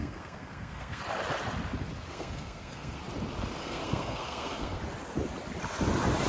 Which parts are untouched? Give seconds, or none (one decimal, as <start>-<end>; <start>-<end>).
1.0-2.1; 3.0-3.6; 4.8-6.3